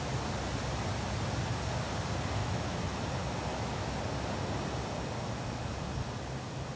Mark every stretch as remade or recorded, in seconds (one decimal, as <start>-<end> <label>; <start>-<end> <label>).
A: 0.0-2.4 recorded; 2.4-3.0 remade; 3.0-3.5 recorded; 3.5-4.0 remade; 4.0-6.8 recorded